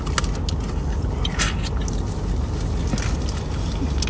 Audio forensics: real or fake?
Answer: real